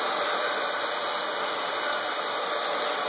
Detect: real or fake real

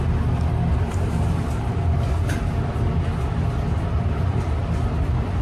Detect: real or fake fake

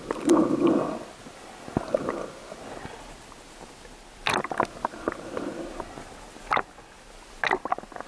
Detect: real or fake real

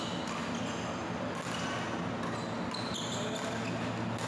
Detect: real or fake real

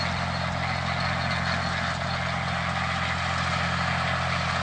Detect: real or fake real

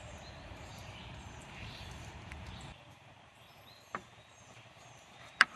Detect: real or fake fake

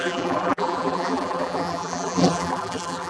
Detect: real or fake fake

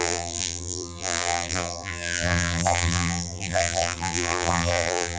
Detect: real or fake fake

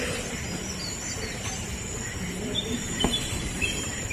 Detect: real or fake fake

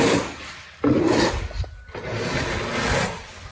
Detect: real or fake real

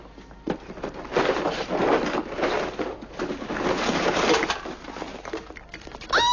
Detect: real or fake real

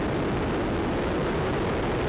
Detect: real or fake real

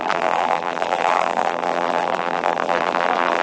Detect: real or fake fake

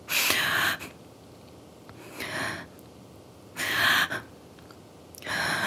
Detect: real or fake real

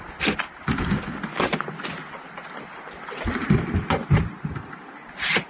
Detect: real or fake fake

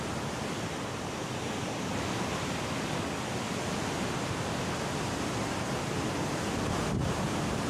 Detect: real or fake fake